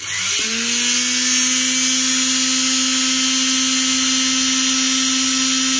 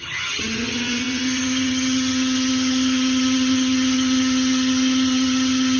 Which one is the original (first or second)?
first